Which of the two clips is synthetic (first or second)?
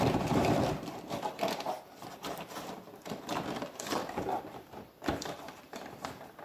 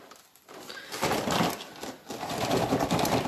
first